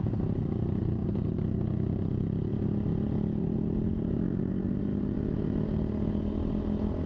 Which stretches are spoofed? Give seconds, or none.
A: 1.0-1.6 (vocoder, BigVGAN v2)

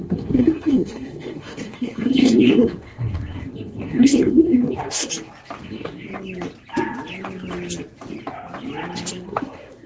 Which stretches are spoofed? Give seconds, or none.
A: 0.0-5.1 (codec, SNAC); 5.6-6.1; 9.1-9.9

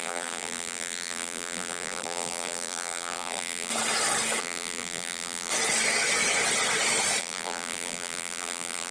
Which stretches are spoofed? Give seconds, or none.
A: 0.0-3.7 (vocoder, BigVGAN v2); 4.4-5.5; 7.2-8.9